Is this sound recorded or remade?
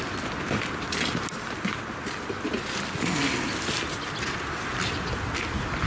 recorded